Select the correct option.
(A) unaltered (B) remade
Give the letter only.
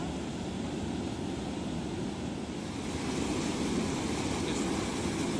A